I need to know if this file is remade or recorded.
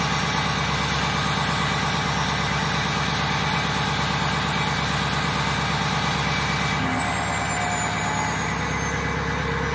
recorded